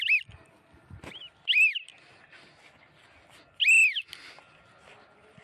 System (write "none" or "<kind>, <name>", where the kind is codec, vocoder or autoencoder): none